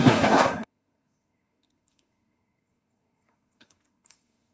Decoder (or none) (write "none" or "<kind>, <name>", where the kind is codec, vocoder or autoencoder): codec, SNAC